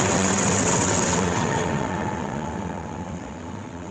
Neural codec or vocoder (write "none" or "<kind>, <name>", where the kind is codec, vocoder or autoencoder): vocoder, WaveNeXt